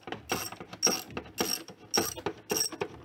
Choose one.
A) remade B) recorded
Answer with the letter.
B